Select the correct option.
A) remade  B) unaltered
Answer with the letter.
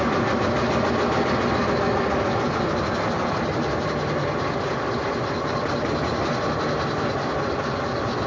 B